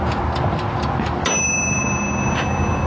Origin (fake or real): real